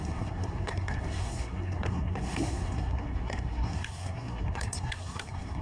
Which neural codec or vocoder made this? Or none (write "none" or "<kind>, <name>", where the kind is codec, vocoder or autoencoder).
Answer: codec, SNAC